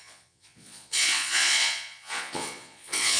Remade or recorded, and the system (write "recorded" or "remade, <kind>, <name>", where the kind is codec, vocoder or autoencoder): remade, vocoder, Vocos